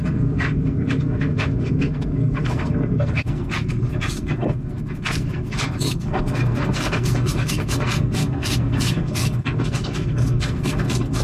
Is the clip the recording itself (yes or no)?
no